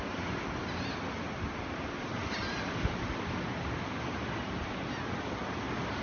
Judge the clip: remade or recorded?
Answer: recorded